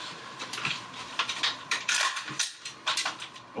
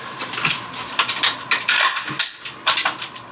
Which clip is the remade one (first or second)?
first